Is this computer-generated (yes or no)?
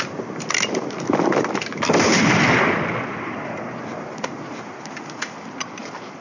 no